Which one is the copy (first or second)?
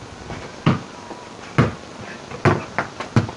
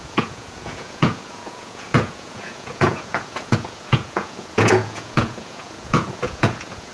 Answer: second